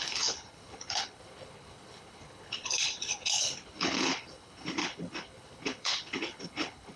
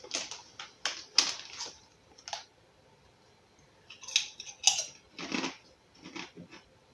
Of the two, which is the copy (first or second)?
first